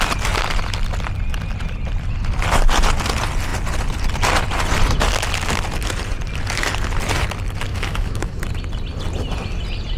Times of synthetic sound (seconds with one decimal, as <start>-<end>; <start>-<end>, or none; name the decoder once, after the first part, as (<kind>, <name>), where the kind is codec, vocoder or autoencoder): 7.7-8.4 (autoencoder, DAC-VAE)

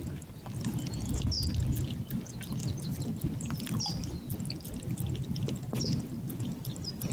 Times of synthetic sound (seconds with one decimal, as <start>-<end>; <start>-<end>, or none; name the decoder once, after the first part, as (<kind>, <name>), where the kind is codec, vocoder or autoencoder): none

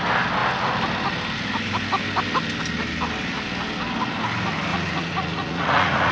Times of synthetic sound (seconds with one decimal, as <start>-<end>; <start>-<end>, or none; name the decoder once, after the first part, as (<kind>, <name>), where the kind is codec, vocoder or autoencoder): 4.7-6.1 (vocoder, Vocos)